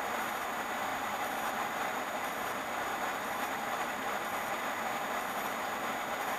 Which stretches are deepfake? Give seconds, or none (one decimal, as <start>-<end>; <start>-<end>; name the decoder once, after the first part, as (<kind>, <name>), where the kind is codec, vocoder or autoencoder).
0.9-4.7 (vocoder, BigVGAN v2)